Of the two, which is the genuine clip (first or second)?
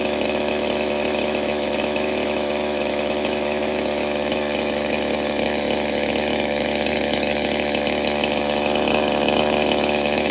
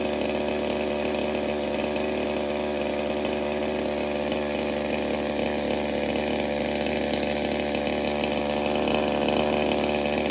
second